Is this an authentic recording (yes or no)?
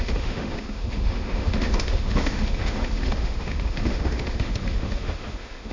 no